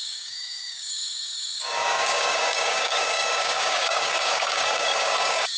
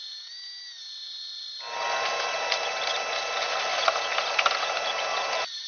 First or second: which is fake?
first